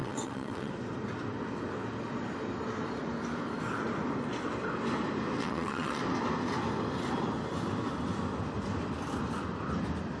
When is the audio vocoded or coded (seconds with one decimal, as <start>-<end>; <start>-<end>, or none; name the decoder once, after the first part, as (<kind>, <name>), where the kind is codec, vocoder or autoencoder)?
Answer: 0.0-0.7 (vocoder, WaveNeXt); 5.4-6.0